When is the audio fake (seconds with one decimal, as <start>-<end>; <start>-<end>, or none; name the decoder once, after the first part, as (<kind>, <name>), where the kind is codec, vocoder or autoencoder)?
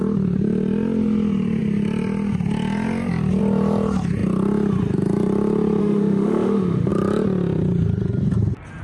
5.8-6.9 (autoencoder, DAC-VAE)